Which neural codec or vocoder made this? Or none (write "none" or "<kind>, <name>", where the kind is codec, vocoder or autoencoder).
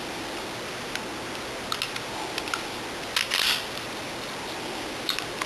none